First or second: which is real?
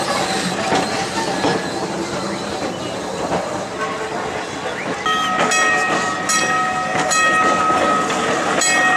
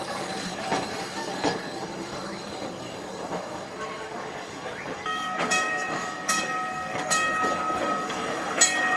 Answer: first